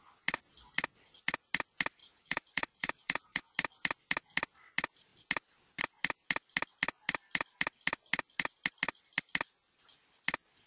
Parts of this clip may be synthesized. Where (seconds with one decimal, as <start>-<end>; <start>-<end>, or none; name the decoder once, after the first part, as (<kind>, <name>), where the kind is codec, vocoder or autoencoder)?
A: 2.0-3.4 (vocoder, BigVGAN v2)